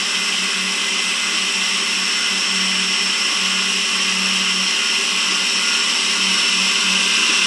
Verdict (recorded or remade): recorded